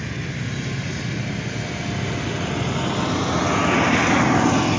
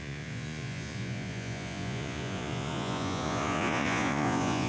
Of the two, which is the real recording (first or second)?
first